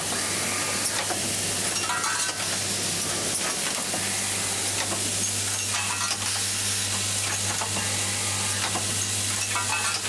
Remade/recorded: recorded